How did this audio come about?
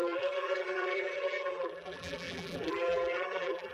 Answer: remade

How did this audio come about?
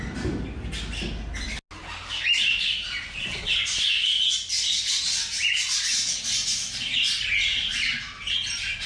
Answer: recorded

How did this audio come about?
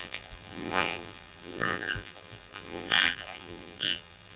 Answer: remade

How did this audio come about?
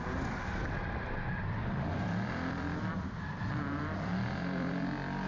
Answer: remade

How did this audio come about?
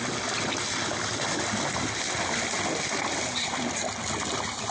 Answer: recorded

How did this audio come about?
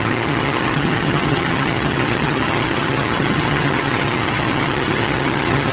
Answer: remade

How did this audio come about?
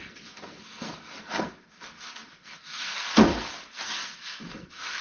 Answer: remade